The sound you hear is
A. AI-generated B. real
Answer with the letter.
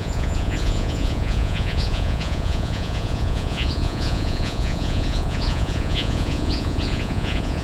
A